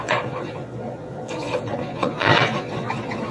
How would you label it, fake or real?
fake